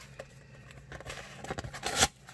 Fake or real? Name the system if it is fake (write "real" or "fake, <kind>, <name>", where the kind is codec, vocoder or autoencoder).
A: real